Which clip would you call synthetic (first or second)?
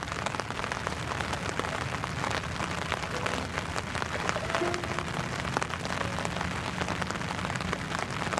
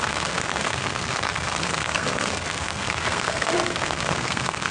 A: second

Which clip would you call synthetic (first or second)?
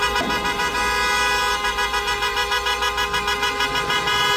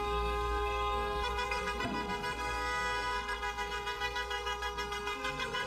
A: second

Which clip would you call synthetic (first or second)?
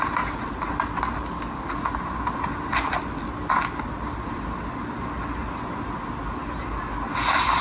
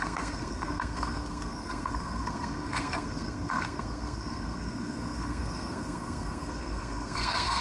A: second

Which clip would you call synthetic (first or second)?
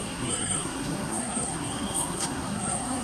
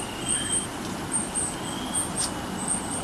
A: first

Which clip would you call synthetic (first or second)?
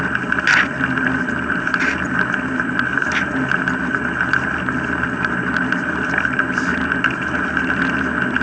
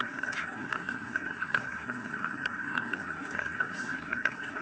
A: second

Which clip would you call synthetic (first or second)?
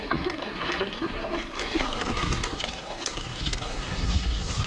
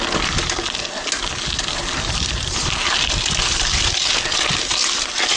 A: first